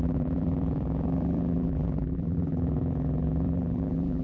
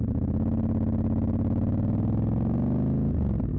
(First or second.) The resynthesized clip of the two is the first